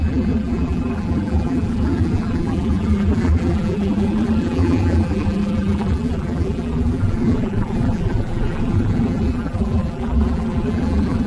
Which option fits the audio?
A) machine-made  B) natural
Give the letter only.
A